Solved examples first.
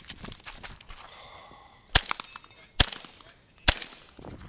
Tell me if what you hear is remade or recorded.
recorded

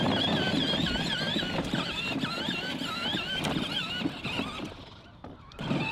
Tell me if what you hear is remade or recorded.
recorded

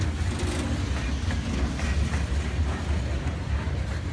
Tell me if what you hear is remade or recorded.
recorded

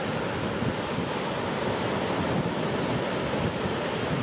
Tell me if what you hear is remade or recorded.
recorded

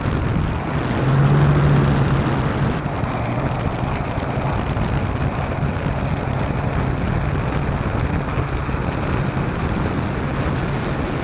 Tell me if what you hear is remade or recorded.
recorded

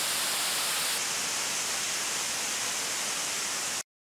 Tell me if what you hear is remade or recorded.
recorded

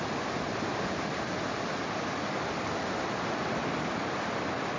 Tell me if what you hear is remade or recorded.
recorded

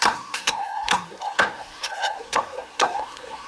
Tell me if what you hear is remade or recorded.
remade